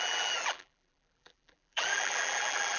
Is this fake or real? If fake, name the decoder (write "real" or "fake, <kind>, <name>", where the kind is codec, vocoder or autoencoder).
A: fake, vocoder, BigVGAN v2